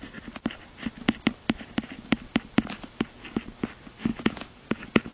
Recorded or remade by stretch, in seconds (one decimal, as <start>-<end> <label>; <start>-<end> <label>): 0.0-4.1 recorded; 4.1-5.1 remade